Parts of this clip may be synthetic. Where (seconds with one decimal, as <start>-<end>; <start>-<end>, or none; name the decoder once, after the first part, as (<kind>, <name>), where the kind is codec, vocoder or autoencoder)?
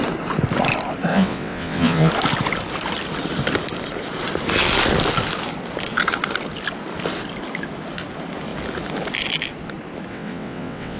1.1-2.1 (vocoder, WaveNeXt); 10.1-11.0